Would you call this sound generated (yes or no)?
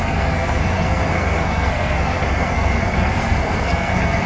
yes